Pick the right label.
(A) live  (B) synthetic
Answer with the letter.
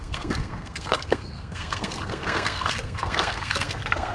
B